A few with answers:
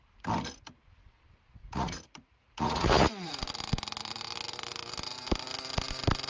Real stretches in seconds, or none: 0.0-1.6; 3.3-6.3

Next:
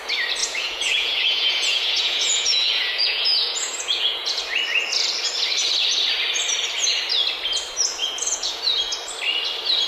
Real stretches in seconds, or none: 0.0-0.4; 4.4-8.0; 8.6-9.9

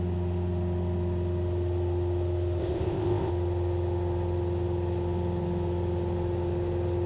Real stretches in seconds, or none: 0.0-2.6; 3.3-7.1